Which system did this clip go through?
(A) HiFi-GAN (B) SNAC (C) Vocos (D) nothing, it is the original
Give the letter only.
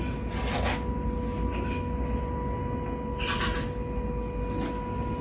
D